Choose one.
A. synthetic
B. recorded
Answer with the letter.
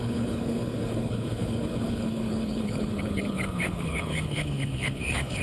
A